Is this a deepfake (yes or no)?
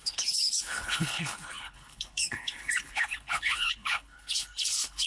yes